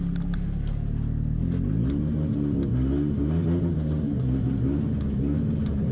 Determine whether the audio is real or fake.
real